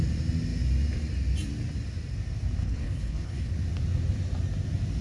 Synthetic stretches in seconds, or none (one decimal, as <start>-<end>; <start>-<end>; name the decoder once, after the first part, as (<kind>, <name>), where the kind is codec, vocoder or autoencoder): 2.6-3.5 (codec, HILCodec)